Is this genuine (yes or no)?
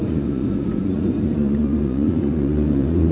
no